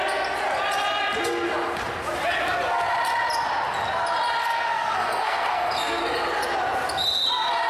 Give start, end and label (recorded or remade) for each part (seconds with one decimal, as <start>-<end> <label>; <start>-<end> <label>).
0.0-4.4 recorded; 4.4-6.0 remade; 6.0-7.7 recorded